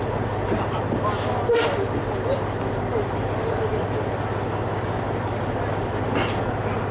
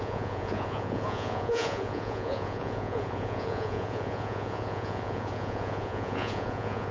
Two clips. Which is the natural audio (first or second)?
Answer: first